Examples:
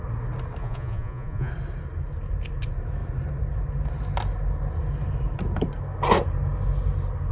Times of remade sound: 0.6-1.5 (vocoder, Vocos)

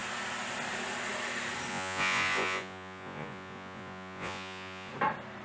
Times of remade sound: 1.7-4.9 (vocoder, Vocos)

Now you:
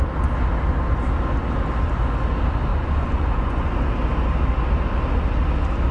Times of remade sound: 2.7-3.7 (vocoder, Vocos)

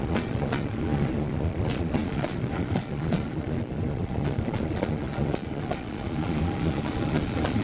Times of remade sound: 0.0-7.6 (vocoder, Vocos)

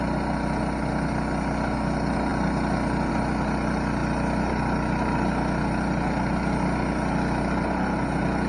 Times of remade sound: none

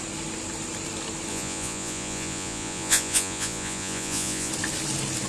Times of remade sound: 1.3-4.5 (vocoder, Vocos)